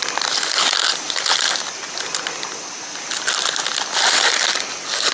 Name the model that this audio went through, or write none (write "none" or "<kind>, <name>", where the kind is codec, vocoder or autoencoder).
none